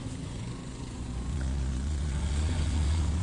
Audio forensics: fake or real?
fake